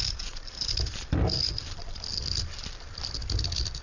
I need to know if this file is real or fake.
real